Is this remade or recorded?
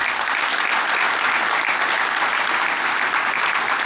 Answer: recorded